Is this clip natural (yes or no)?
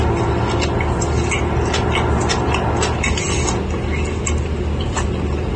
yes